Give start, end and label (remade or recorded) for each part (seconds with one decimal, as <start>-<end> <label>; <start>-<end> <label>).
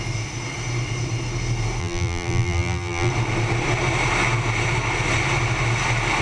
0.0-1.8 recorded; 1.8-3.1 remade; 3.1-6.2 recorded